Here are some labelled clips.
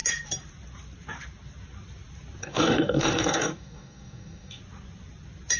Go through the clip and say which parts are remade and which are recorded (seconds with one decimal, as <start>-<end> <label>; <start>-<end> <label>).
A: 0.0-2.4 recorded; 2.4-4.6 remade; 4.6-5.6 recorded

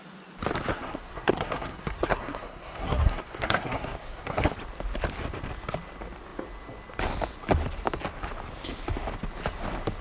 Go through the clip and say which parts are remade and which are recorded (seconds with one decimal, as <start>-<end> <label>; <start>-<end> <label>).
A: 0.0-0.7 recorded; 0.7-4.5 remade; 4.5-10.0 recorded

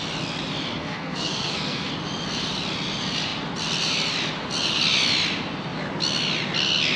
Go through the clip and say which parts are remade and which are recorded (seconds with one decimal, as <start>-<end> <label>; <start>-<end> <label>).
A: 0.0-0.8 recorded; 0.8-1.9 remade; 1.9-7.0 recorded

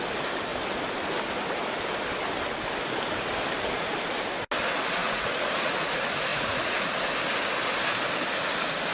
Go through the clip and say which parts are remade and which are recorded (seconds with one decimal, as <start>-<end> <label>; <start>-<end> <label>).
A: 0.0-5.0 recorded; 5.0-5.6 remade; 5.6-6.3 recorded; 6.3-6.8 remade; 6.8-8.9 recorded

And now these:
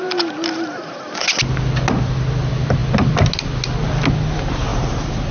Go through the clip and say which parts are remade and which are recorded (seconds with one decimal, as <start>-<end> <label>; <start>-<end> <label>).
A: 0.0-5.3 recorded

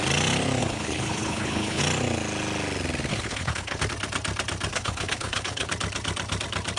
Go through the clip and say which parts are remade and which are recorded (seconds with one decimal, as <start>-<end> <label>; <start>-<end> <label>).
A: 0.0-0.6 recorded; 0.6-1.8 remade; 1.8-3.1 recorded; 3.1-3.8 remade; 3.8-4.7 recorded; 4.7-5.7 remade; 5.7-6.8 recorded

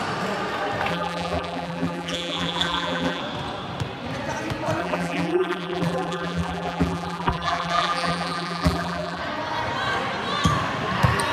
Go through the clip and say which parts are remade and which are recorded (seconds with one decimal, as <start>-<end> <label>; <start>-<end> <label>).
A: 0.0-0.9 recorded; 0.9-3.2 remade; 3.2-4.8 recorded; 4.8-9.2 remade; 9.2-11.3 recorded